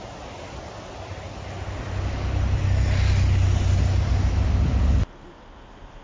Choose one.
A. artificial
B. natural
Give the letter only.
B